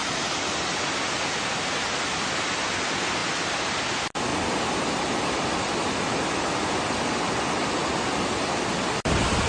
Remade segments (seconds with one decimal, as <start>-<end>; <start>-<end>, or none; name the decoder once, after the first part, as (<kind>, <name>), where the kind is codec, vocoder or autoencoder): none